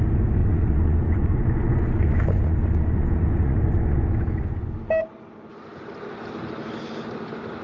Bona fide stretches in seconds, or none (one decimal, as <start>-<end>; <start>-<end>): 0.0-0.4; 4.8-7.6